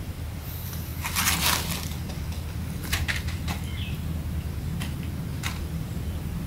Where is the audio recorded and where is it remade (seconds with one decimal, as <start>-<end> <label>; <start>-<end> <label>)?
0.0-0.9 remade; 0.9-1.4 recorded; 1.4-1.9 remade; 1.9-5.5 recorded; 5.5-6.5 remade